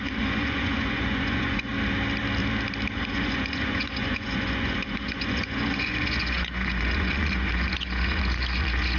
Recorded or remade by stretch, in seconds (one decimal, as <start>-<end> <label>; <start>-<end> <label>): 0.0-1.7 remade; 1.7-3.0 recorded; 3.0-9.0 remade